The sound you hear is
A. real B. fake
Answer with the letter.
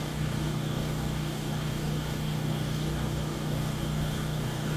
B